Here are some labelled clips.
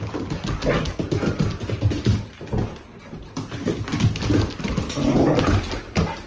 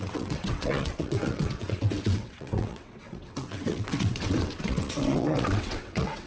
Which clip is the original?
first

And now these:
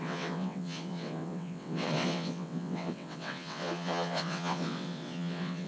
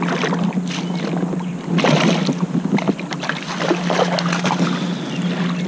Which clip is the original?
second